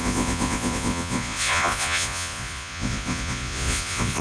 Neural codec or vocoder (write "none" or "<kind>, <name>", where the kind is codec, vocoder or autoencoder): vocoder, Vocos